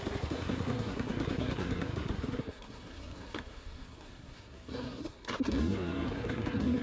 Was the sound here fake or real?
fake